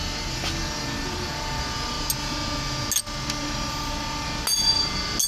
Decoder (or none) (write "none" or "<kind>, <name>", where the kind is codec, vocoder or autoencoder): none